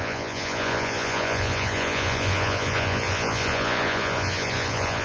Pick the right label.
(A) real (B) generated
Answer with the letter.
B